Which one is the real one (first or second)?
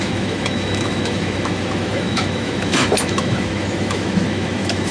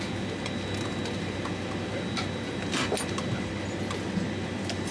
second